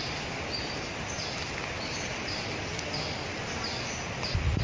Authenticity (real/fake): real